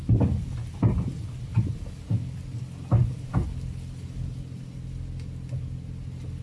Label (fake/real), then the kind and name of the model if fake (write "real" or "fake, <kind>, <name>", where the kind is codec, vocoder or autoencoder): real